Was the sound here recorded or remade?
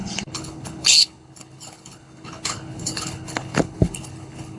remade